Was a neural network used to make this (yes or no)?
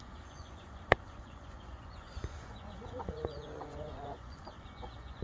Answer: yes